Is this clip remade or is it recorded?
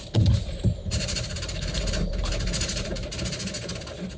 remade